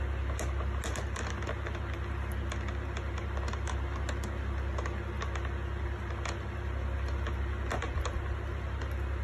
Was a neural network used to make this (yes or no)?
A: no